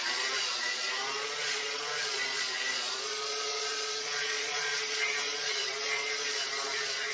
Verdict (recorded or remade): remade